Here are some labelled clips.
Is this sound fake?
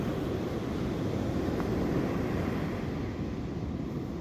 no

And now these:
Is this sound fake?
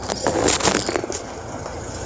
no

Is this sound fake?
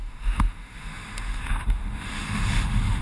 yes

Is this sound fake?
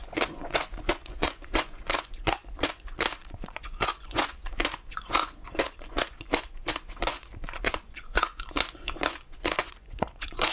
yes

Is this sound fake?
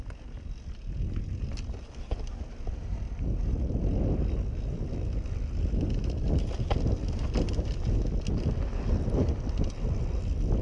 no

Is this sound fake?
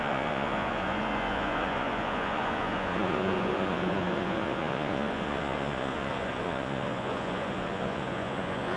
yes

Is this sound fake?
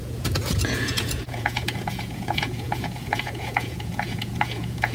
yes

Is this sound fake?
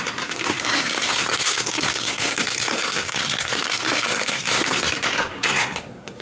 yes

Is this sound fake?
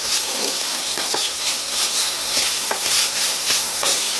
yes